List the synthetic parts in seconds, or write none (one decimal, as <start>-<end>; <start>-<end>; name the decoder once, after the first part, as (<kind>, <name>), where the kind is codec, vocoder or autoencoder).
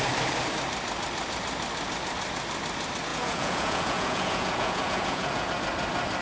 3.1-5.5 (vocoder, Vocos)